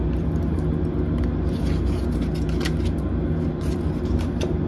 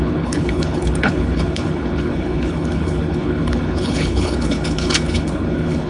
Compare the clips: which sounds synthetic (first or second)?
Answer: second